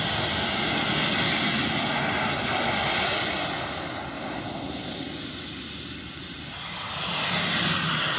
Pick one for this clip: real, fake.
real